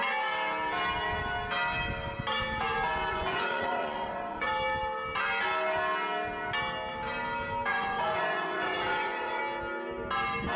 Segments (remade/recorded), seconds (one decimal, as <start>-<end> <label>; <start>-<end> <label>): 0.0-3.1 recorded; 3.1-4.5 remade; 4.5-7.7 recorded; 7.7-9.4 remade; 9.4-10.6 recorded